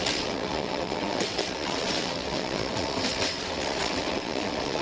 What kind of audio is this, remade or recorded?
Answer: remade